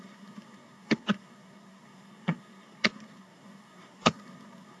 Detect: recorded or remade remade